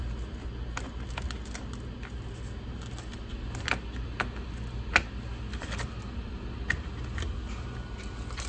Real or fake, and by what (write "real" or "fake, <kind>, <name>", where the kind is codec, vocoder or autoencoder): real